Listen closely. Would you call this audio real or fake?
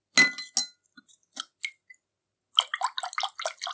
real